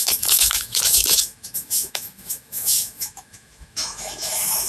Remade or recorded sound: remade